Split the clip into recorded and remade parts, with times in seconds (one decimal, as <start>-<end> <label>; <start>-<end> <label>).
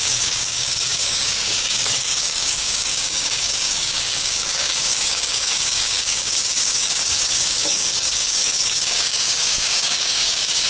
0.0-10.7 remade